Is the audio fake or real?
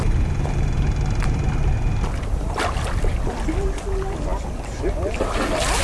real